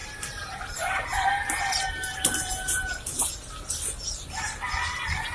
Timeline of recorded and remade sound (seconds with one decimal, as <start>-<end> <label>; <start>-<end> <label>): 0.0-3.2 remade; 3.2-5.3 recorded